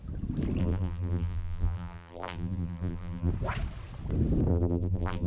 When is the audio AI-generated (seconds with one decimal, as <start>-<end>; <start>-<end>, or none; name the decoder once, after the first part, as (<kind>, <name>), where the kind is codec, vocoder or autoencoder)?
0.6-3.3 (vocoder, BigVGAN v2); 4.5-5.3